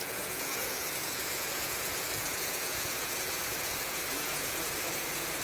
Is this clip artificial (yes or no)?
yes